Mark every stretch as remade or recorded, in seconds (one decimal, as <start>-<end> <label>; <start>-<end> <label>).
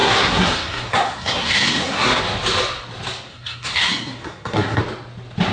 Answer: 0.0-2.2 remade; 2.2-3.3 recorded; 3.3-4.8 remade; 4.8-5.5 recorded